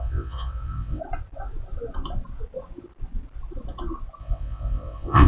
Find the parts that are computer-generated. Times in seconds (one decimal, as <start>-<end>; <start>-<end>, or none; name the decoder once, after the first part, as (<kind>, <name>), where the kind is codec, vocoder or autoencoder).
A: 0.0-1.0 (vocoder, WaveNeXt); 4.2-5.3